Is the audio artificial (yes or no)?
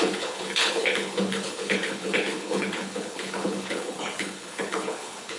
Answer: yes